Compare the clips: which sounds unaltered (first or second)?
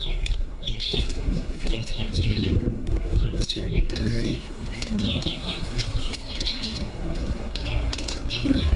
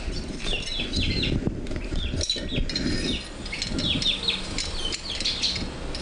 second